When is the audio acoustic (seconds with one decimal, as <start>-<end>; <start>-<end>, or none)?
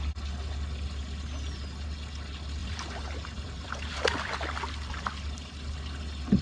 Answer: 0.0-2.6; 4.3-6.4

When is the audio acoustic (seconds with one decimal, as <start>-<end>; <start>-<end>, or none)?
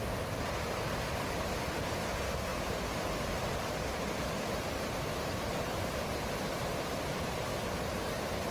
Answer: 7.5-8.5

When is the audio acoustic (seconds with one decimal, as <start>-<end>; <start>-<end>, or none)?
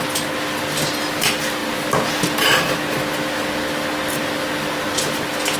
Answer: 0.0-5.6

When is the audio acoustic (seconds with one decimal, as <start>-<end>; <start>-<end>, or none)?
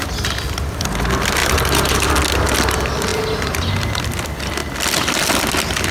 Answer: 0.0-1.4; 2.1-5.9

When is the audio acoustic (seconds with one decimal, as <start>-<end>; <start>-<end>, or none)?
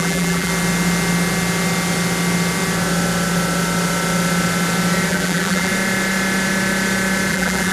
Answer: 0.5-5.1; 5.7-7.3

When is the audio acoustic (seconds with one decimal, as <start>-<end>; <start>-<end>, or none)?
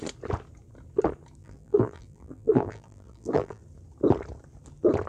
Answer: 0.0-1.4; 3.6-5.1